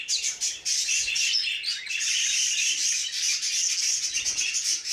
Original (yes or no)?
yes